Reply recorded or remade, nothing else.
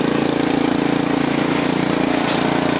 recorded